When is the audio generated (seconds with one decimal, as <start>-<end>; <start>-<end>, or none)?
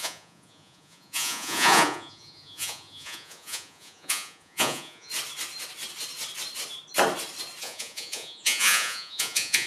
0.0-5.1; 7.6-9.7